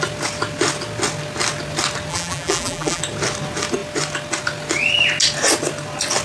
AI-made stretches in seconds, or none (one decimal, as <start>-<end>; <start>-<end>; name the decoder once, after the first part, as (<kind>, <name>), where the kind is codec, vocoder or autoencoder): 2.1-3.0 (vocoder, BigVGAN v2)